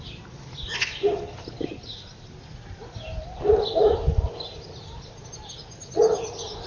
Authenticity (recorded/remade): recorded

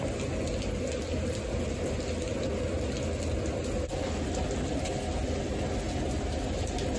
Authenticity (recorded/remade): recorded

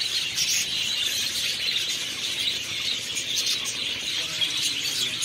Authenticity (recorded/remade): recorded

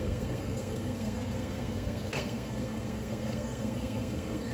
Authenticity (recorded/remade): remade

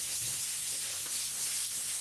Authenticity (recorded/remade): remade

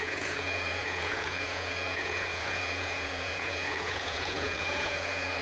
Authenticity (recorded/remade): remade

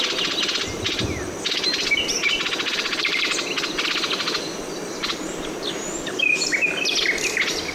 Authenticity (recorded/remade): remade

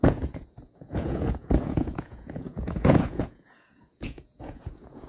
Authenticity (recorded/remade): remade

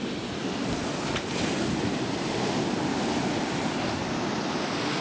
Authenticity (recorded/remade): recorded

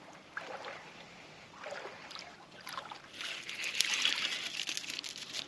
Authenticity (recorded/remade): remade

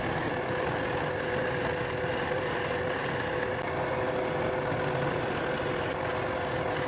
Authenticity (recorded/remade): recorded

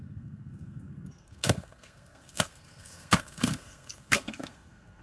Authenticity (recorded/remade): remade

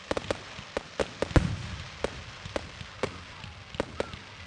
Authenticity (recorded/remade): recorded